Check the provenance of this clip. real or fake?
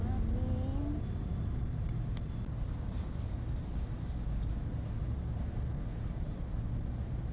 real